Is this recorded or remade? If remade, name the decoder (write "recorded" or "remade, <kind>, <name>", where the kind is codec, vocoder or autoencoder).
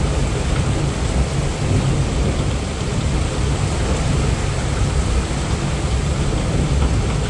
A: recorded